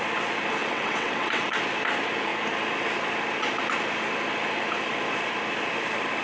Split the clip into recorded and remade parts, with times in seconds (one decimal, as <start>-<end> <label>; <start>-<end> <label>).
0.0-0.6 recorded; 0.6-1.6 remade; 1.6-6.2 recorded